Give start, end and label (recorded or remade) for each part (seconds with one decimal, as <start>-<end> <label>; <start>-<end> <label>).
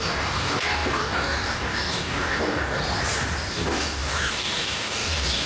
0.0-2.8 remade; 2.8-3.5 recorded; 3.5-5.5 remade